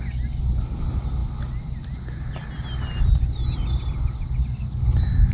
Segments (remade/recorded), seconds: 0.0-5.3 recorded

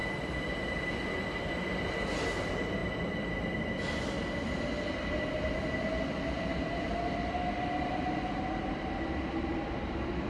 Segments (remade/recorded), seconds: 0.0-10.3 recorded

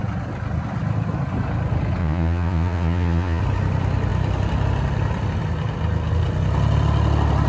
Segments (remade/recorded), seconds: 0.0-2.0 recorded; 2.0-3.4 remade; 3.4-7.5 recorded

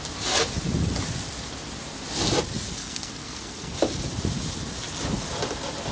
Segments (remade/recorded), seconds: 0.0-2.7 recorded; 2.7-3.7 remade; 3.7-5.9 recorded

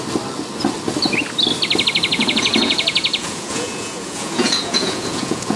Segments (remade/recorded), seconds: 0.0-2.1 recorded; 2.1-5.6 remade